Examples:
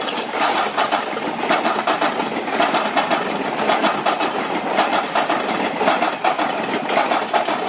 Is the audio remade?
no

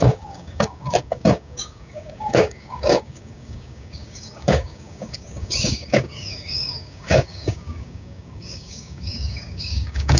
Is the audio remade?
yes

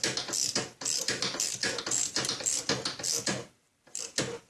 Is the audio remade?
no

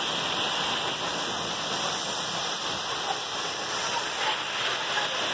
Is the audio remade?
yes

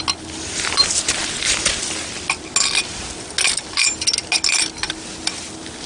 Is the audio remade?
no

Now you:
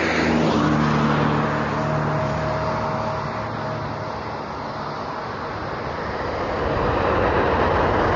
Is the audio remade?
no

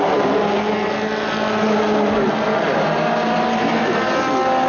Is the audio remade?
no